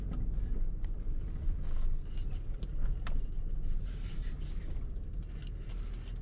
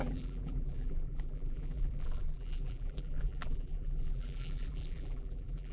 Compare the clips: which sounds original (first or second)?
first